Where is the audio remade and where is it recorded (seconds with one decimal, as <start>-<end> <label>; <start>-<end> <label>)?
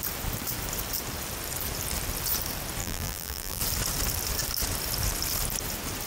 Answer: 0.0-2.8 recorded; 2.8-3.6 remade; 3.6-6.1 recorded